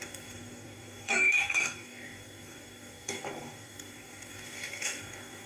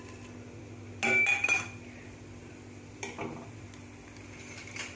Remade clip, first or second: first